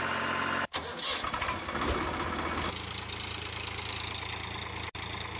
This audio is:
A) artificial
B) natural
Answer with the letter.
B